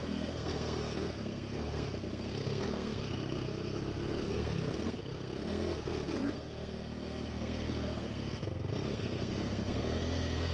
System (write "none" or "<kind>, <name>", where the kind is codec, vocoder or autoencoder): codec, SNAC